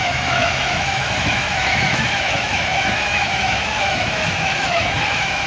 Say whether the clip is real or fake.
fake